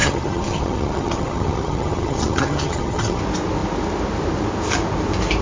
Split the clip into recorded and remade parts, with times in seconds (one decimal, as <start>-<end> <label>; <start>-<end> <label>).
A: 0.0-3.2 remade; 3.2-5.4 recorded

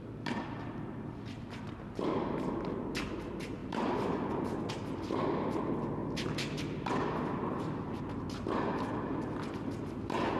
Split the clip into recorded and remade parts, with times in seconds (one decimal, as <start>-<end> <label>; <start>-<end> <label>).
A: 0.0-6.0 recorded; 6.0-8.0 remade; 8.0-10.4 recorded

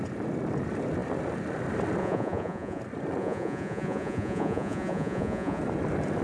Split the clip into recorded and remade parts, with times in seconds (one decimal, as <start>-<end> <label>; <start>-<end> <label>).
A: 0.0-2.0 recorded; 2.0-2.8 remade; 2.8-3.2 recorded; 3.2-5.6 remade; 5.6-6.2 recorded

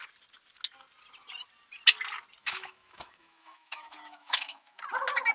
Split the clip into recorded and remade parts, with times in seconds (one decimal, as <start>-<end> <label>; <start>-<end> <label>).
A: 0.0-2.4 recorded; 2.4-4.8 remade; 4.8-5.3 recorded

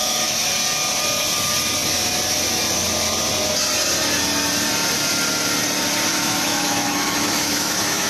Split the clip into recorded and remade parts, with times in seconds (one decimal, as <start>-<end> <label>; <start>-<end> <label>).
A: 0.0-0.5 remade; 0.5-6.1 recorded; 6.1-8.1 remade